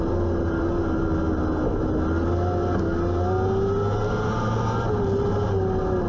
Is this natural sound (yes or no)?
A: yes